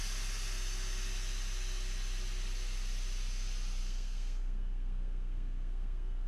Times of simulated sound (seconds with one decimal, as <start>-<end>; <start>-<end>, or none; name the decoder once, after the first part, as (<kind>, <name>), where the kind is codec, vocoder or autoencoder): 3.8-6.3 (codec, SNAC)